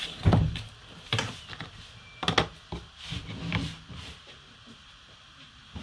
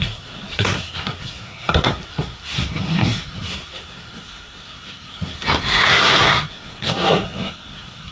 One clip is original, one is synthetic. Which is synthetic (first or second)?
second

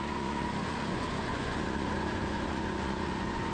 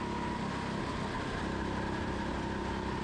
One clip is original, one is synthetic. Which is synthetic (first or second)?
first